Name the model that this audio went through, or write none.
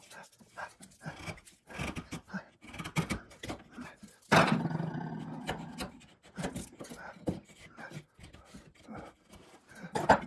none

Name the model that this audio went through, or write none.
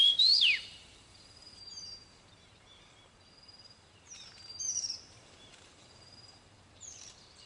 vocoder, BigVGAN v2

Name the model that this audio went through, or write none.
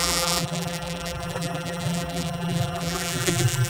vocoder, BigVGAN v2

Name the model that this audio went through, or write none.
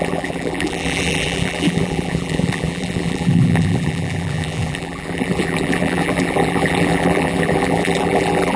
vocoder, BigVGAN v2